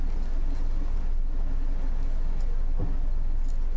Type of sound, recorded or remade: recorded